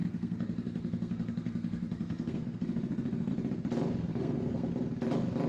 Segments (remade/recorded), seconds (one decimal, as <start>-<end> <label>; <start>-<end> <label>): 0.0-3.3 remade; 3.3-4.1 recorded; 4.1-4.7 remade; 4.7-5.5 recorded